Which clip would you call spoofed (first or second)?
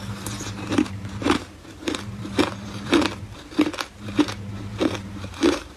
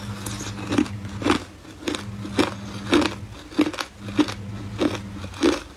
first